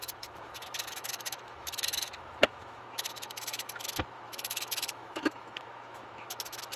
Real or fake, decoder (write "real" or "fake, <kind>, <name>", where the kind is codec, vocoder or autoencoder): fake, autoencoder, DAC-VAE